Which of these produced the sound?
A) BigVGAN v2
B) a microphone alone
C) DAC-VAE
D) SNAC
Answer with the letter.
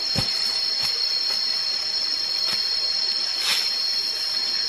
B